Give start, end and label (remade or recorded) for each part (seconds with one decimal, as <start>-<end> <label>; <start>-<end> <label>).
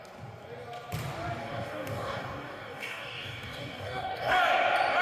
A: 0.0-1.4 recorded; 1.4-4.4 remade; 4.4-5.0 recorded